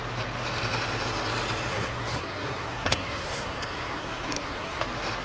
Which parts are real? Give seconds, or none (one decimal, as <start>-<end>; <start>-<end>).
0.0-1.7; 4.8-5.2